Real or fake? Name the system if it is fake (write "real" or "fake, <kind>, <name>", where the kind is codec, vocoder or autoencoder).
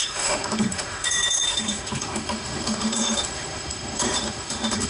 fake, autoencoder, DAC-VAE